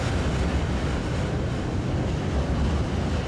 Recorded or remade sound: recorded